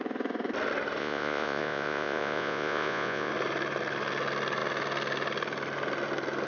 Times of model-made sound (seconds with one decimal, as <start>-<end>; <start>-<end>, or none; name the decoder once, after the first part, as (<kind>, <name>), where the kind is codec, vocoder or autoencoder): 1.0-3.3 (vocoder, Vocos)